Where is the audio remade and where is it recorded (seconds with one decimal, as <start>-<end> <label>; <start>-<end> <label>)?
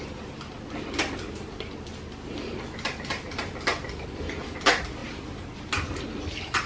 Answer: 0.0-6.7 recorded